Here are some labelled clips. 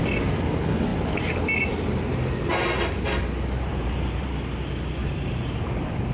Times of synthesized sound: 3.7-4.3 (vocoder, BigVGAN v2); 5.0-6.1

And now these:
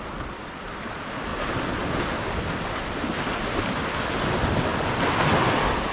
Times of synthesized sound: none